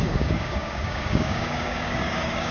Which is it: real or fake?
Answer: fake